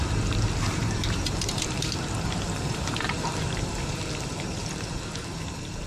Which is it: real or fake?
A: fake